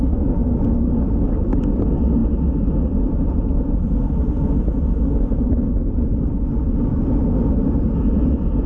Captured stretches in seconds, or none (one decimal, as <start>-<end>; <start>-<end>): 0.0-8.7